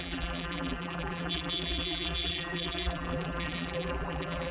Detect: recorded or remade remade